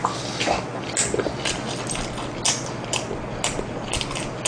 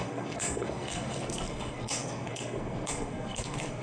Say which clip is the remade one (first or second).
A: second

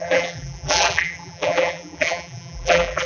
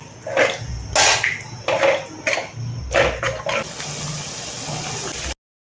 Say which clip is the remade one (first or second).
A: first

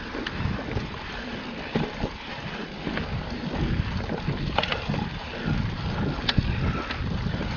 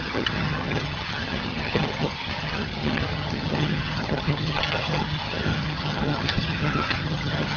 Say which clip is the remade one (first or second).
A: second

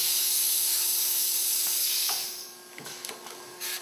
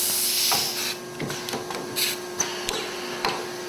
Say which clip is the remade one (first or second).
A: first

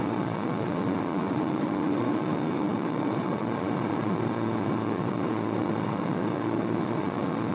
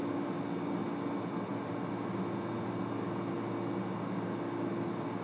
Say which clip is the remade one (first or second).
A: first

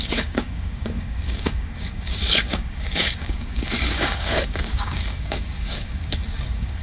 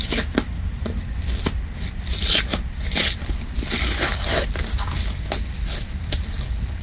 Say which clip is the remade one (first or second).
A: first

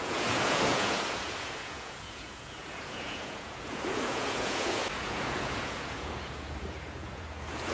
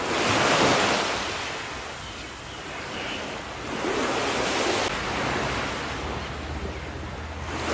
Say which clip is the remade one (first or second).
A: first